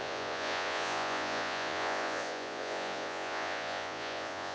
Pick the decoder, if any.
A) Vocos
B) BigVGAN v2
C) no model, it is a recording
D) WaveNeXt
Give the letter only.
A